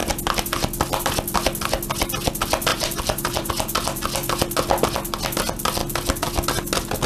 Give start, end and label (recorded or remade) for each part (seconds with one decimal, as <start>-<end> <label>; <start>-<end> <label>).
0.0-2.7 recorded; 2.7-3.5 remade; 3.5-7.1 recorded